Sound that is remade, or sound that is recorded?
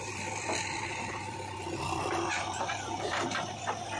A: remade